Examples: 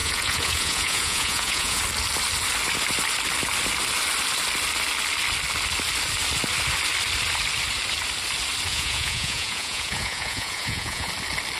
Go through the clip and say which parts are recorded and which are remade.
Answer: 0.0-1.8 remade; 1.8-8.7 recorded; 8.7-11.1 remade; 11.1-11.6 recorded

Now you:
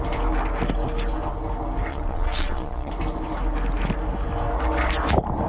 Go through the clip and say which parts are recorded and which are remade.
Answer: 0.0-1.9 recorded; 1.9-2.9 remade; 2.9-5.5 recorded

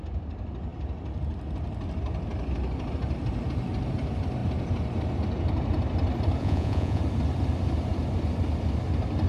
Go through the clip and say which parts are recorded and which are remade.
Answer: 0.0-6.4 recorded; 6.4-7.0 remade; 7.0-9.3 recorded